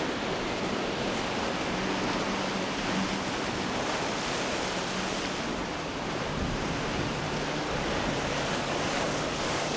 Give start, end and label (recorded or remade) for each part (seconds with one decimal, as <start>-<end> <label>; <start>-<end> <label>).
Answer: 0.0-8.3 recorded; 8.3-9.8 remade